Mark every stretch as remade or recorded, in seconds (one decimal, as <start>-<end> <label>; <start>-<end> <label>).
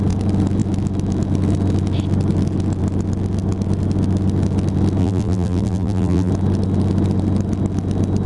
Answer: 0.0-5.0 recorded; 5.0-6.3 remade; 6.3-8.3 recorded